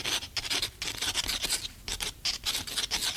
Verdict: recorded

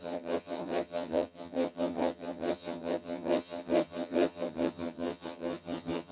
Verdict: remade